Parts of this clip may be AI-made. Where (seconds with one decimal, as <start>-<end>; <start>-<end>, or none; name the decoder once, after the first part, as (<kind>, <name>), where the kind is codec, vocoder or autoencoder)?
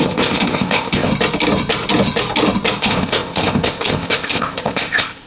0.0-1.1 (codec, ZipCodec); 2.8-5.3